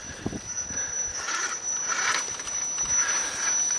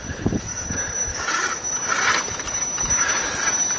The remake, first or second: second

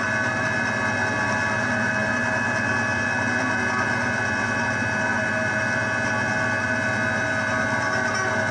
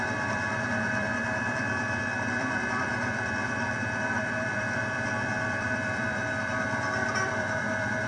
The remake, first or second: second